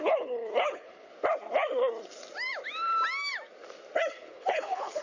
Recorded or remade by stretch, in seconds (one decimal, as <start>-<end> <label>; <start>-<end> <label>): 0.0-1.1 remade; 1.1-4.1 recorded; 4.1-5.0 remade